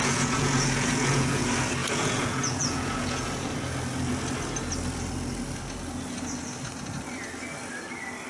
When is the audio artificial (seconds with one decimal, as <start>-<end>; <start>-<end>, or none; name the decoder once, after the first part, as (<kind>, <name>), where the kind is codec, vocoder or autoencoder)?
0.0-1.4 (vocoder, Vocos); 1.8-3.5